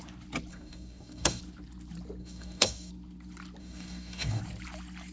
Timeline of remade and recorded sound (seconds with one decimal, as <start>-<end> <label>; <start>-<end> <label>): 0.0-0.5 recorded; 0.5-1.4 remade; 1.4-2.2 recorded; 2.2-2.9 remade; 2.9-3.6 recorded; 3.6-4.4 remade; 4.4-5.1 recorded

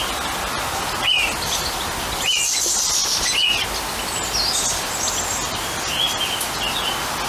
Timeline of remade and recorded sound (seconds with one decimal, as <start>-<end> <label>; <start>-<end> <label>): 0.0-7.3 recorded

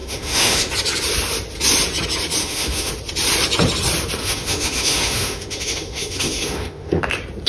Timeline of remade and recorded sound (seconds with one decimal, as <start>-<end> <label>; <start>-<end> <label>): 0.0-0.7 remade; 0.7-2.4 recorded; 2.4-2.9 remade; 2.9-4.2 recorded; 4.2-7.0 remade; 7.0-7.5 recorded

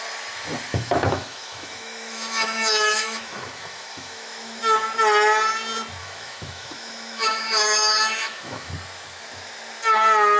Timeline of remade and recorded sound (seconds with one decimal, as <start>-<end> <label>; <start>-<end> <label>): 0.0-0.7 recorded; 0.7-4.6 remade; 4.6-6.0 recorded; 6.0-8.7 remade; 8.7-10.4 recorded